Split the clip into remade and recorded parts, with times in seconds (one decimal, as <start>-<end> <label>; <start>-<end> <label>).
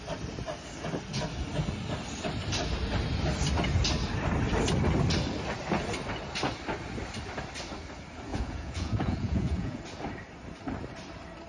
0.0-8.3 recorded; 8.3-9.8 remade; 9.8-11.5 recorded